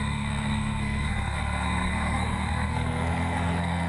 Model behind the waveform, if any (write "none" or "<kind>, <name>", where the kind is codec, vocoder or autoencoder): codec, SNAC